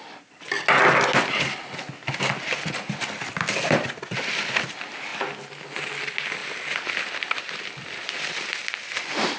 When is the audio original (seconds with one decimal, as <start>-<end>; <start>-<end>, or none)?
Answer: 0.0-9.4